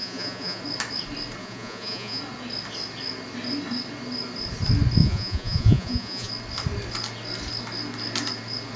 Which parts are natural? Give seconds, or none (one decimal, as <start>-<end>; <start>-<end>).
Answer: 0.6-1.4; 2.2-5.0; 6.3-8.8